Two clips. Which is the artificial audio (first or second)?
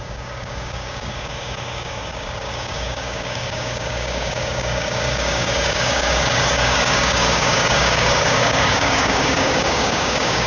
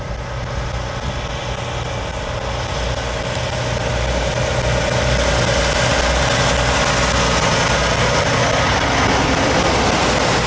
first